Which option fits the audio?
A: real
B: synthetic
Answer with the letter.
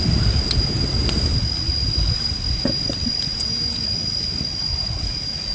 A